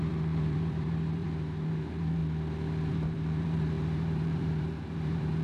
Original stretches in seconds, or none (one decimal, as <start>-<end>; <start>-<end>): 2.2-2.9

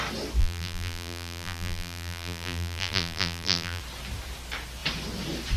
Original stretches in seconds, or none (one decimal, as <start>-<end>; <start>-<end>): 0.0-0.4; 3.8-5.6

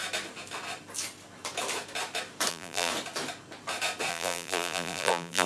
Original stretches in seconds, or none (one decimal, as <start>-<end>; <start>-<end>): 0.0-2.5; 2.9-4.1

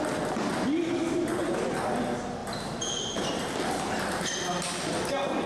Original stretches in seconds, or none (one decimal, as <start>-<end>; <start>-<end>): 0.0-1.0; 1.6-2.4; 3.6-5.5

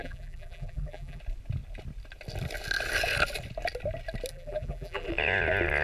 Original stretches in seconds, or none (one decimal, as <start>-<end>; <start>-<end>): 1.2-4.3; 5.1-5.8

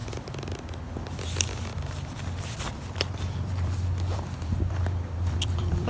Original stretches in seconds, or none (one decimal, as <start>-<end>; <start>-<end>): 0.0-3.5

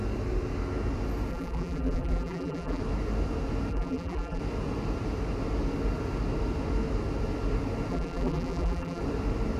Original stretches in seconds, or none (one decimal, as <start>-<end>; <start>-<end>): 0.0-1.3; 2.8-3.7; 4.4-7.9; 9.0-9.6